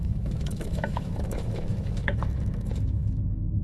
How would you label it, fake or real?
fake